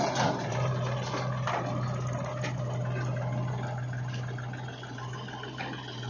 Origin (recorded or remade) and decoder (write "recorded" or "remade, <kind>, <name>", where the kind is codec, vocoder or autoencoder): recorded